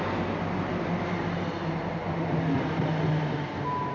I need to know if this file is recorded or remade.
recorded